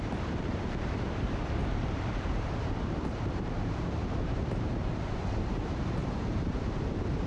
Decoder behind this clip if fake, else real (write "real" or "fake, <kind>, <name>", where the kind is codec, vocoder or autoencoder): fake, vocoder, BigVGAN v2